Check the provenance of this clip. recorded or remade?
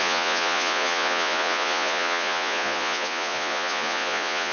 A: remade